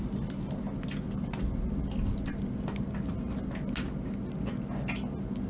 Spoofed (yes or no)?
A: no